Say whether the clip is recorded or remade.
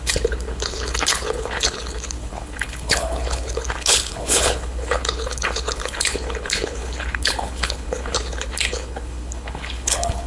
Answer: remade